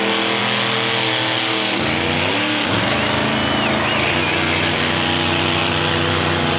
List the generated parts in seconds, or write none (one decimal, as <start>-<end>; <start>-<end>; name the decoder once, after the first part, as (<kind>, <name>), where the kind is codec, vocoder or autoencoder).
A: none